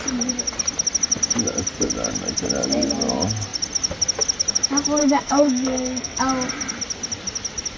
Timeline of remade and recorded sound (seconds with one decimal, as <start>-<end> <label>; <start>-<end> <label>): 0.0-5.0 recorded; 5.0-6.2 remade; 6.2-7.8 recorded